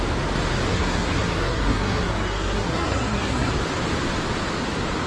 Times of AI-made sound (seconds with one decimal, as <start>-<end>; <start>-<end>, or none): 0.7-3.5